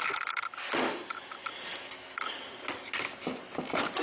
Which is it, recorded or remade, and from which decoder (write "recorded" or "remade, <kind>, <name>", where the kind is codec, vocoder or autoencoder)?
recorded